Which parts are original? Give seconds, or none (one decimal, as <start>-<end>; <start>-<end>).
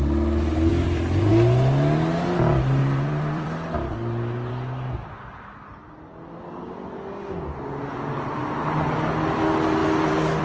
0.0-0.7; 1.3-2.8; 4.5-9.8